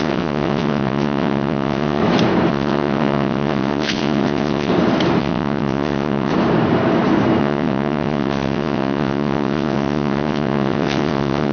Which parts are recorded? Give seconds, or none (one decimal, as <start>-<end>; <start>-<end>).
2.0-2.5; 4.7-5.2; 6.3-7.4